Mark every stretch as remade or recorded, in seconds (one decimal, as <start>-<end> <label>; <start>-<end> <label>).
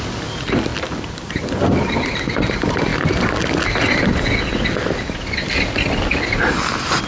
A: 0.0-7.1 recorded